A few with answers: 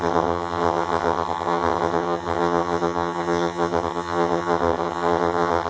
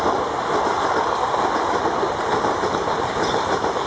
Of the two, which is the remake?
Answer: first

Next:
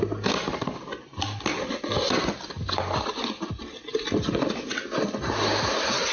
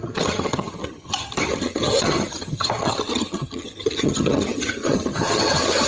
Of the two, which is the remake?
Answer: second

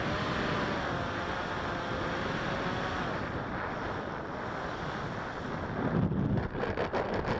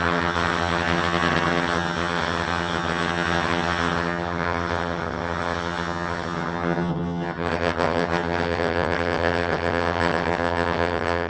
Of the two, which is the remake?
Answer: second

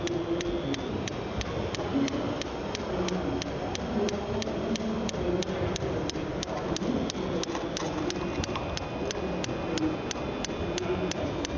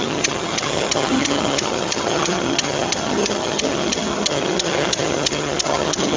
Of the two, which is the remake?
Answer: second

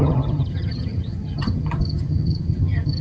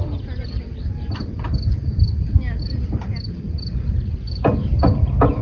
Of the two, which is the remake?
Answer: first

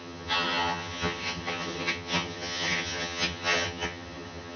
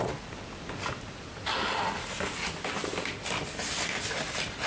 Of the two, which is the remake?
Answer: first